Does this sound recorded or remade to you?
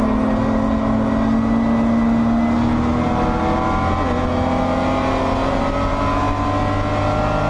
recorded